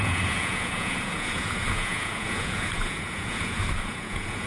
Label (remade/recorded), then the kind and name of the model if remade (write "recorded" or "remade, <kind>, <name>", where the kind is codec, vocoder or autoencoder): remade, vocoder, Vocos